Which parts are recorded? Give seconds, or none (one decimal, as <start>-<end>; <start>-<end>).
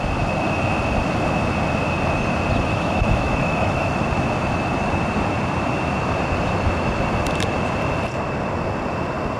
0.0-2.7; 4.0-9.4